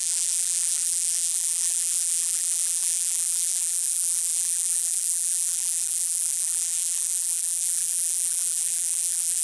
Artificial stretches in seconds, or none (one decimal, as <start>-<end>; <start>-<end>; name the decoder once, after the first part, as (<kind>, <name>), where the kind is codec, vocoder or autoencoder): 0.0-9.4 (vocoder, BigVGAN v2)